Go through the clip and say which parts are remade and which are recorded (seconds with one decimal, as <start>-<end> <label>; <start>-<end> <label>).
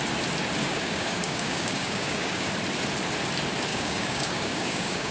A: 0.0-0.6 recorded; 0.6-2.5 remade; 2.5-3.7 recorded; 3.7-5.1 remade